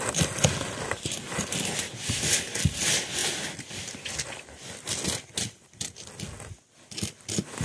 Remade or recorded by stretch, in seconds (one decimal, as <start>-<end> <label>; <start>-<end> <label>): 0.0-7.6 recorded